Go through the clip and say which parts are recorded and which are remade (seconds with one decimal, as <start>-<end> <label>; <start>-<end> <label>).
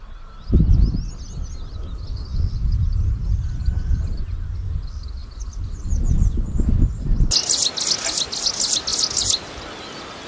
0.0-10.3 recorded